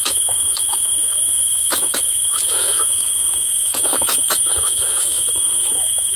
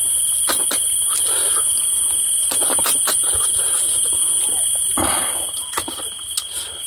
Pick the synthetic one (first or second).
first